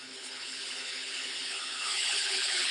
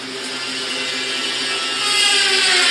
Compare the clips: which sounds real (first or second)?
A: second